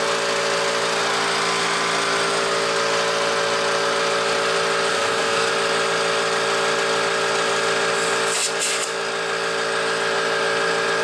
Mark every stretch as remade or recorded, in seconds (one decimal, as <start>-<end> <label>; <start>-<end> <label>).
0.0-4.9 recorded; 4.9-5.5 remade; 5.5-11.0 recorded